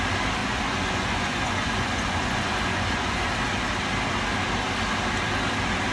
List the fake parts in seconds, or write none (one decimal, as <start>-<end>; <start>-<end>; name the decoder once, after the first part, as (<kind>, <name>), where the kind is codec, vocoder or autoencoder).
0.4-3.3 (vocoder, Vocos)